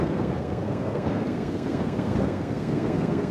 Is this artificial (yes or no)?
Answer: yes